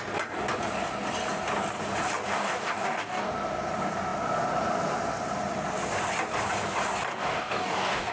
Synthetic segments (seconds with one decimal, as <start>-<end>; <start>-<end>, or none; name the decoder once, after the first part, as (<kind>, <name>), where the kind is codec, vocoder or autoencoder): 2.3-3.3 (codec, DAC); 7.1-8.1